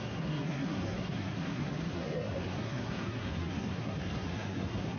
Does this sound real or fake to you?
fake